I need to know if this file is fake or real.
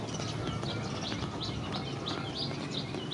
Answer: real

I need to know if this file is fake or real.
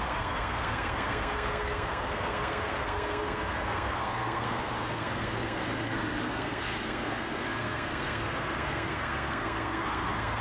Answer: fake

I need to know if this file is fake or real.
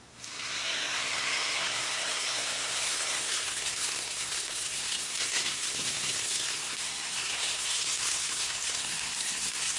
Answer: fake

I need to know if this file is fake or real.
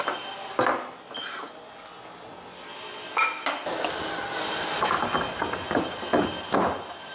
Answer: real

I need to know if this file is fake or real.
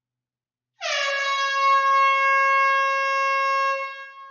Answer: real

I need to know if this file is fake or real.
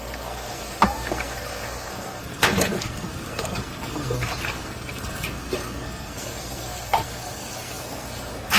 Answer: fake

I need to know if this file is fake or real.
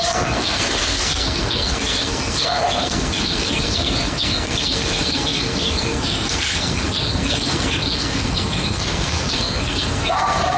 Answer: fake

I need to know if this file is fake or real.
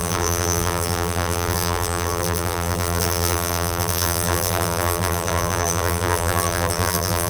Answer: fake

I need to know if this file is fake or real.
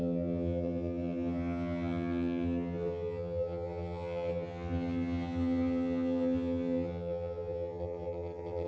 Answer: fake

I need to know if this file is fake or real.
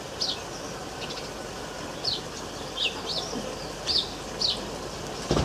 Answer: real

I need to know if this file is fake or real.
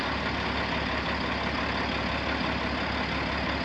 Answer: real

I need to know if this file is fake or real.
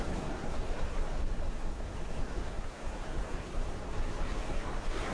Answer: fake